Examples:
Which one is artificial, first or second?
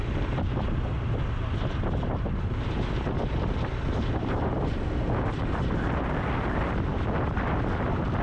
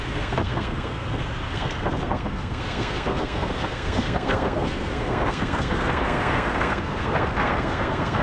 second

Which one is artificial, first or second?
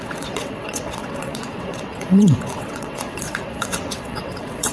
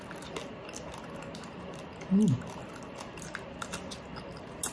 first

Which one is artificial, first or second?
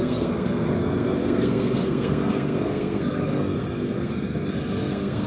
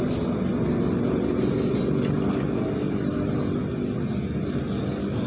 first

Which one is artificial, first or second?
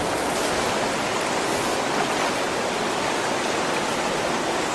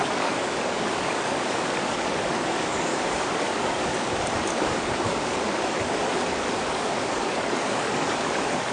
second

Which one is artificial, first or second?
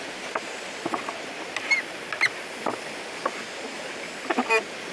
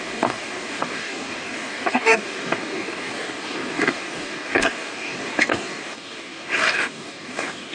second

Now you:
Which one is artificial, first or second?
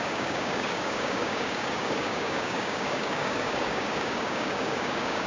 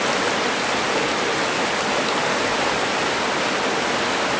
first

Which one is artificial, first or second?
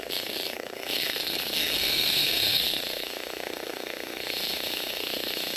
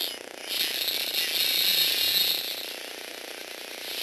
first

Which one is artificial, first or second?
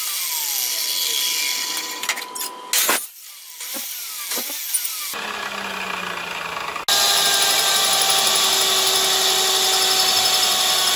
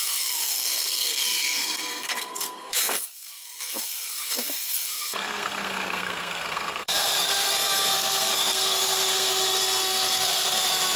second